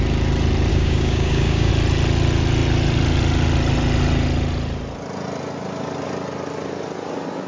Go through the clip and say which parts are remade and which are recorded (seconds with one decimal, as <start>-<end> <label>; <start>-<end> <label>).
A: 0.0-0.7 recorded; 0.7-1.7 remade; 1.7-7.5 recorded